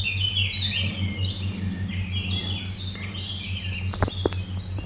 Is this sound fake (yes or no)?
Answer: no